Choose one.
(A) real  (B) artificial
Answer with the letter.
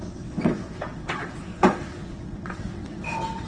B